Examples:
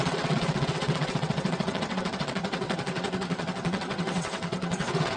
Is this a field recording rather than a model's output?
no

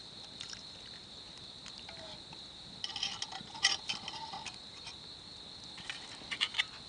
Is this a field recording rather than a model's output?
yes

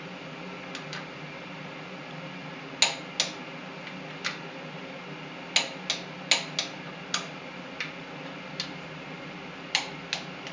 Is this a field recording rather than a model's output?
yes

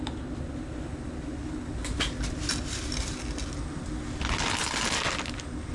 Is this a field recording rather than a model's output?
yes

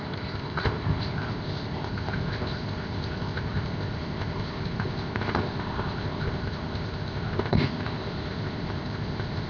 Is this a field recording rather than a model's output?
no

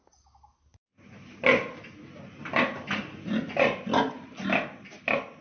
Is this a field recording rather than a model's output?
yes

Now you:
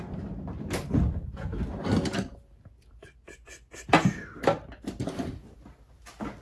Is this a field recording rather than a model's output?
yes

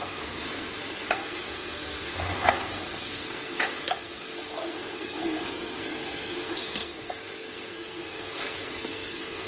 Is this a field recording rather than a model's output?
no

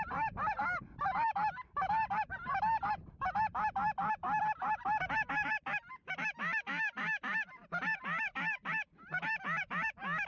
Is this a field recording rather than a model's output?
yes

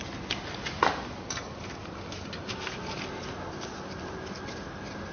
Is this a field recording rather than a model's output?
yes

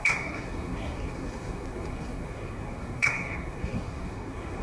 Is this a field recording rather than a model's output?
no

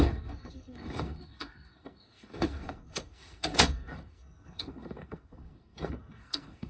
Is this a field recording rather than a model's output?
no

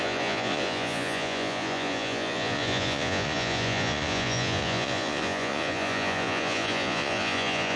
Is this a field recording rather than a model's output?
no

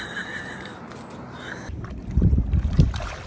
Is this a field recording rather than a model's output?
yes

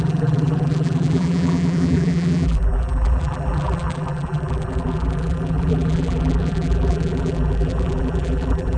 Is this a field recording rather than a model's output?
no